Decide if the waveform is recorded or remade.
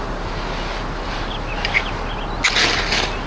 recorded